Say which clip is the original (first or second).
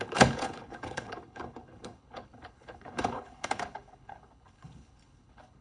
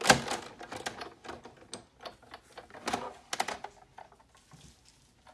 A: second